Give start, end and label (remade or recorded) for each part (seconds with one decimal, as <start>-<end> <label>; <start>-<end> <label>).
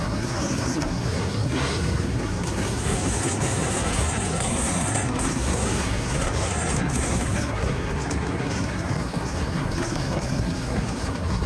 0.0-11.5 remade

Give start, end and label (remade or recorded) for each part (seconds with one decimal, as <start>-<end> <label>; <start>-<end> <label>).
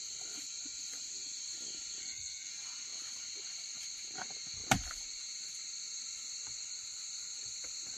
0.0-2.0 recorded; 2.0-2.5 remade; 2.5-8.0 recorded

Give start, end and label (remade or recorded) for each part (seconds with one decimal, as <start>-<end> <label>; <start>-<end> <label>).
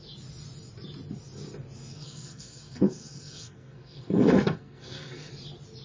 0.0-1.9 recorded; 1.9-5.3 remade; 5.3-5.8 recorded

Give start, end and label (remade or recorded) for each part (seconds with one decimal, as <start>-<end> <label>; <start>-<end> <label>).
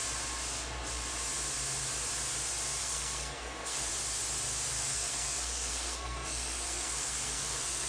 0.0-2.8 recorded; 2.8-3.9 remade; 3.9-4.7 recorded; 4.7-7.9 remade